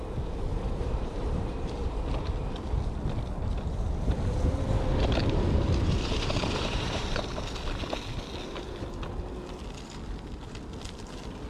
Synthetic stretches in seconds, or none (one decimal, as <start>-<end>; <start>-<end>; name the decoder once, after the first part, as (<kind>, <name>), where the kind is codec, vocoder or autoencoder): 0.5-2.0 (vocoder, BigVGAN v2); 4.9-7.2